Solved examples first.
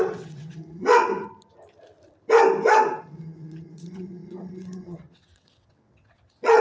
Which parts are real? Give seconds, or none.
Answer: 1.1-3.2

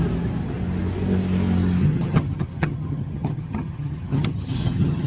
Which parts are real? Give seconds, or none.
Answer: 0.0-1.8

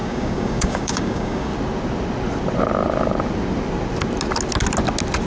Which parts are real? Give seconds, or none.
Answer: 1.5-5.3

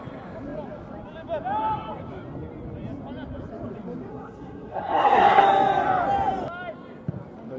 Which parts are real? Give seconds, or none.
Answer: 0.0-4.1; 5.4-7.6

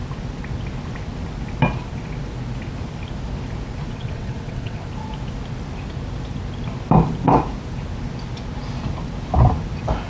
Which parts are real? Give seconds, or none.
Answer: 0.0-3.9; 4.9-10.1

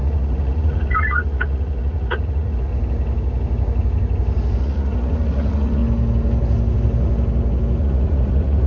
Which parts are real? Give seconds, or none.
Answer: 2.7-4.6; 5.8-7.8

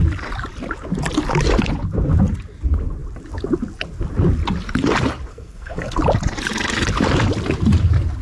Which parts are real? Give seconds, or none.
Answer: 0.0-5.3; 6.0-8.2